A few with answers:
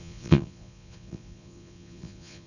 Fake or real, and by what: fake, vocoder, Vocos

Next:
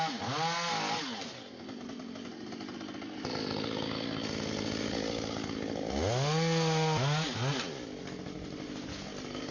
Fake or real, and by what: real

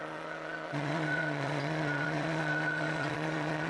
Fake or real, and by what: fake, vocoder, Vocos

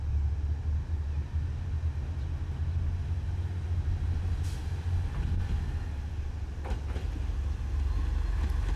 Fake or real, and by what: real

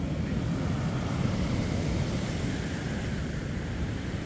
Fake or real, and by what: real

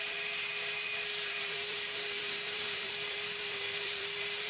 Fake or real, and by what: fake, vocoder, BigVGAN v2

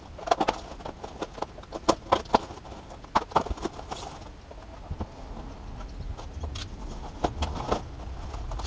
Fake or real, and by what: real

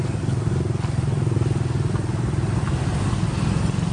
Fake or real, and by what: real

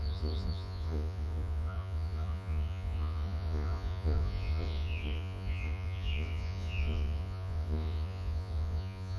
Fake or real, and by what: fake, vocoder, Vocos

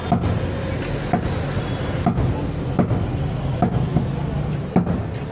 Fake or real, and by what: real